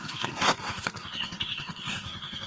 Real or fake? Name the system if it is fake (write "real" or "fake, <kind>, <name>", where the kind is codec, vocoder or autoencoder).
fake, codec, SNAC